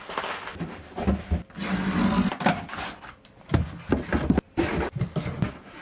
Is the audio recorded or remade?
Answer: recorded